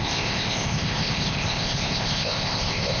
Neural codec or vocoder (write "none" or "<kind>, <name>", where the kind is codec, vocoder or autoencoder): codec, ZipCodec